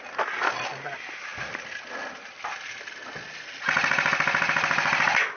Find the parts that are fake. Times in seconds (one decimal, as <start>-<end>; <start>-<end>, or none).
none